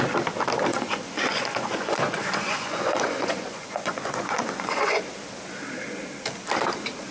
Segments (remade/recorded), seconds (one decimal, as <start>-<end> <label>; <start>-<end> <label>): 0.0-0.7 recorded; 0.7-5.0 remade; 5.0-7.1 recorded